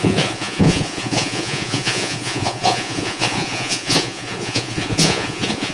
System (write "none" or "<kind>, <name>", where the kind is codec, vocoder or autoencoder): vocoder, Vocos